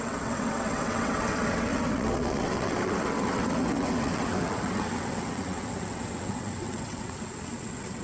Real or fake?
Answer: fake